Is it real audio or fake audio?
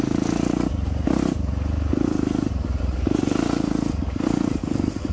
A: real